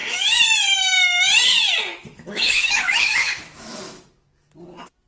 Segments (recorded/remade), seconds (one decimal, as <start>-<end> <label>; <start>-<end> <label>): 0.0-1.9 recorded; 1.9-4.5 remade; 4.5-5.1 recorded

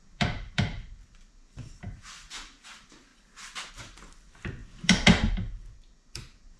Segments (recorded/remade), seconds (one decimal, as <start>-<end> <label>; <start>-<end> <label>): 0.0-3.1 remade; 3.1-3.7 recorded; 3.7-6.6 remade